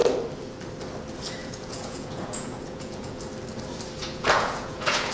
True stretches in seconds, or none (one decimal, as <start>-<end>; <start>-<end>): 0.0-1.4; 3.2-4.0